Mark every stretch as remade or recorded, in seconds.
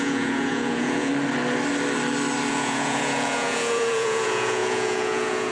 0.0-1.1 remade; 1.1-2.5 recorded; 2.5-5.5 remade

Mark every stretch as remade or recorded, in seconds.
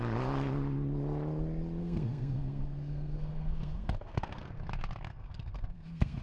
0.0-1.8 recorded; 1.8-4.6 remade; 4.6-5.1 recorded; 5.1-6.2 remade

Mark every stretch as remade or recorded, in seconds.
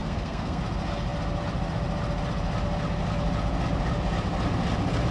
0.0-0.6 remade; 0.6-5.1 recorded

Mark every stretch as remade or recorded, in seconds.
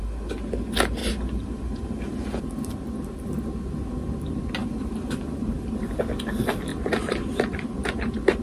0.0-1.0 recorded; 1.0-2.4 remade; 2.4-4.6 recorded; 4.6-6.0 remade; 6.0-6.7 recorded; 6.7-8.4 remade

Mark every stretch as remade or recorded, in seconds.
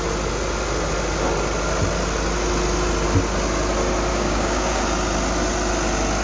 0.0-4.1 recorded; 4.1-4.8 remade; 4.8-6.2 recorded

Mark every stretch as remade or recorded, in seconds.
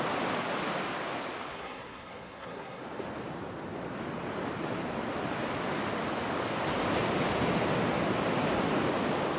0.0-1.5 recorded; 1.5-2.8 remade; 2.8-9.4 recorded